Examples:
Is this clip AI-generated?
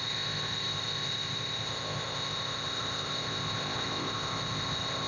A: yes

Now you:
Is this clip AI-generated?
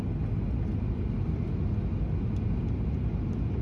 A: no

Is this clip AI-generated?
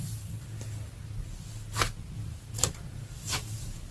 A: no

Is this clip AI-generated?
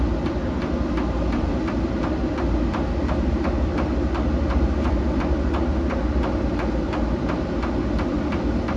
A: no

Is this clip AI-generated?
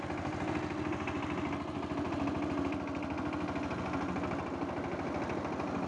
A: no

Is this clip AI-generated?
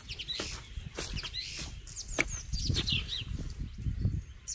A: no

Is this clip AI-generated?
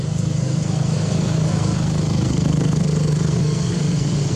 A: yes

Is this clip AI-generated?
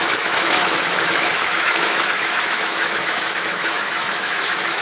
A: yes